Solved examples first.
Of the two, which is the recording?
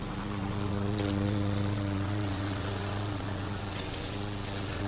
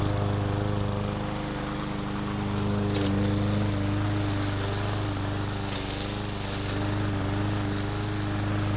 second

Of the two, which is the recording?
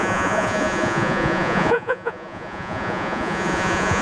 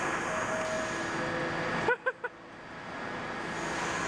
second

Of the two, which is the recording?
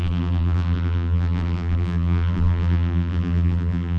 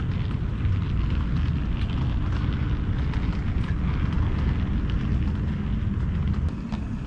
second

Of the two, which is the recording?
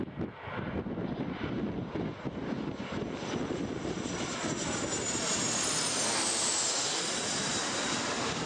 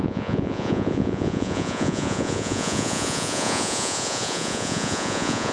first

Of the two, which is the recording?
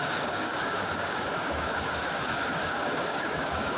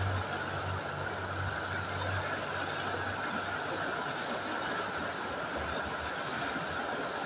second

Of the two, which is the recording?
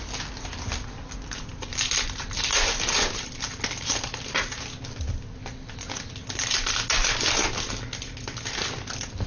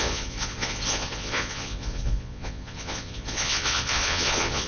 first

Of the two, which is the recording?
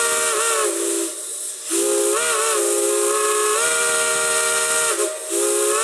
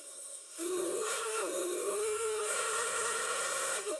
first